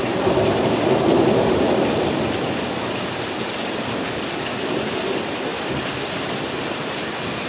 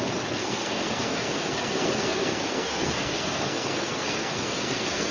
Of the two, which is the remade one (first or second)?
second